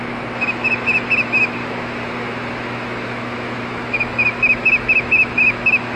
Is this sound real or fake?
fake